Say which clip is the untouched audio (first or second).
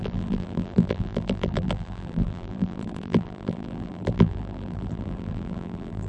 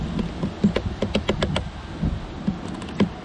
second